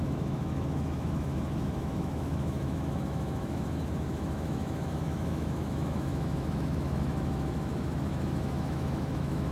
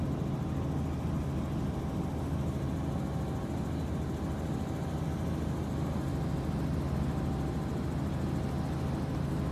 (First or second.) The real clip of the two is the second